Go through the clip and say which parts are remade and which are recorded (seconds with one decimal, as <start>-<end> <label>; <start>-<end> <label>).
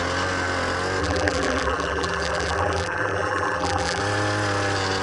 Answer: 0.0-1.0 recorded; 1.0-4.0 remade; 4.0-5.0 recorded